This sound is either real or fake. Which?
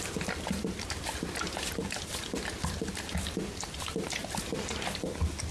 real